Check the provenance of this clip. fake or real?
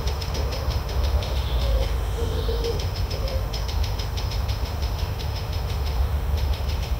fake